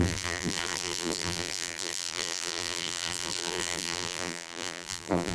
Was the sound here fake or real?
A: fake